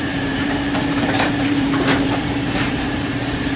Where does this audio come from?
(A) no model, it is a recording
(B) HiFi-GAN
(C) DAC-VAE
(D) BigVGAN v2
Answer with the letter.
D